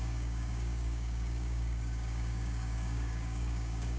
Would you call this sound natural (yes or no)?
no